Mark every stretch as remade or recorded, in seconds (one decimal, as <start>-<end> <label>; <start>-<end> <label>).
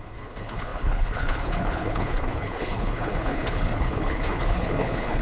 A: 0.0-5.2 remade